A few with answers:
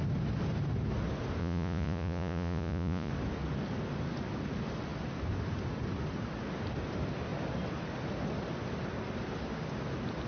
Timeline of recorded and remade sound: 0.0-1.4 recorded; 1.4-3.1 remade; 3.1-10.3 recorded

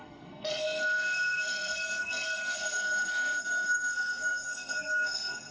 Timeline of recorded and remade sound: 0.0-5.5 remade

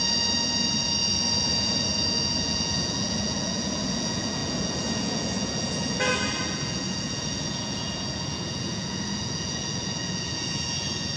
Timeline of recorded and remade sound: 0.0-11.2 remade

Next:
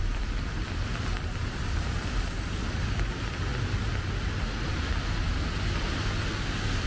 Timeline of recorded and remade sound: 0.0-3.5 remade; 3.5-6.9 recorded

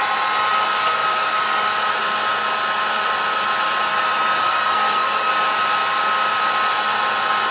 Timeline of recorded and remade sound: 0.0-4.4 recorded; 4.4-5.3 remade; 5.3-7.5 recorded